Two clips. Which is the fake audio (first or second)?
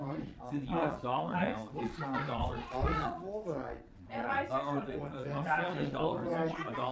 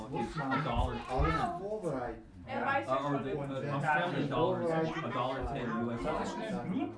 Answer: first